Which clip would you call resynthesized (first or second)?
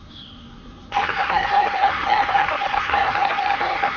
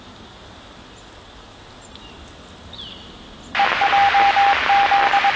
first